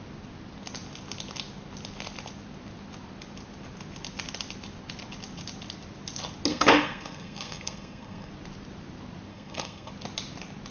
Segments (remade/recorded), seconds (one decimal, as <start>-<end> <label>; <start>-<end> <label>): 0.0-6.5 recorded; 6.5-8.3 remade; 8.3-9.3 recorded; 9.3-9.9 remade; 9.9-10.7 recorded